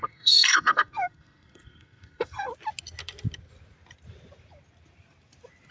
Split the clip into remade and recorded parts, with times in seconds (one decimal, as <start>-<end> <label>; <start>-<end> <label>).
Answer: 0.0-2.5 remade; 2.5-5.7 recorded